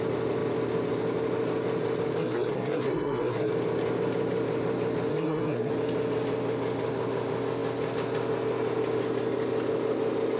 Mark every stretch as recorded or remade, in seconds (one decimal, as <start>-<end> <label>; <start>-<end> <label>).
0.0-2.2 recorded; 2.2-3.5 remade; 3.5-5.1 recorded; 5.1-5.7 remade; 5.7-10.4 recorded